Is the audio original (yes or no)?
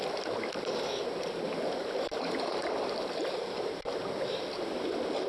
yes